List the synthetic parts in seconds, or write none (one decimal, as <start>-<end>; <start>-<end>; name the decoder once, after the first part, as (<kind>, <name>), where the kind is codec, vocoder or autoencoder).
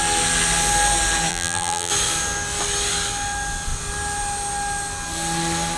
1.3-1.9 (vocoder, BigVGAN v2)